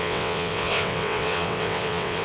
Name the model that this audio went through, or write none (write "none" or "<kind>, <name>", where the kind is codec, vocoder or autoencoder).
vocoder, WaveNeXt